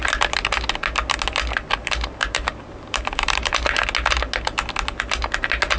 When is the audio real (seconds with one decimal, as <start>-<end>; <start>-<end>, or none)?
0.0-1.8; 3.5-5.8